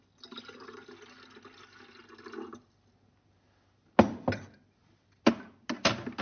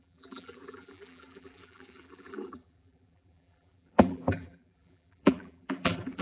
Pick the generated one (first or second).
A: second